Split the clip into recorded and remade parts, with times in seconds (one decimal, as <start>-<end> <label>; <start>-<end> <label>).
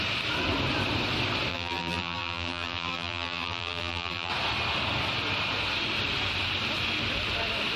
0.0-1.5 recorded; 1.5-4.3 remade; 4.3-7.8 recorded